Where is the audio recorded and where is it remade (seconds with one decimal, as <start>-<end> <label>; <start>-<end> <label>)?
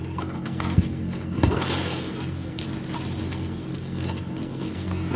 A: 0.0-2.6 remade; 2.6-3.2 recorded; 3.2-5.2 remade